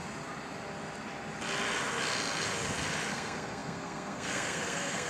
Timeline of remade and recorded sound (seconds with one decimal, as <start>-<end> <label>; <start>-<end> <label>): 0.0-3.1 recorded; 3.1-5.1 remade